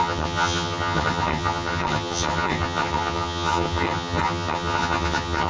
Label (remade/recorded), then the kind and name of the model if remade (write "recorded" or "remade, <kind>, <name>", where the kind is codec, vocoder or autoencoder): remade, vocoder, HiFi-GAN